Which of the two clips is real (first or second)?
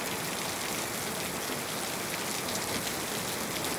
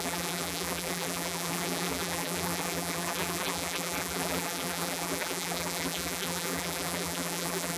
first